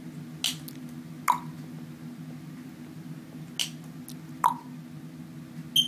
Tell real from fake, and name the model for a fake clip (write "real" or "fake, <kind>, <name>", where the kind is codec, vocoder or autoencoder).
real